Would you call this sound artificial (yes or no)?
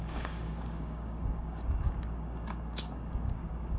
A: yes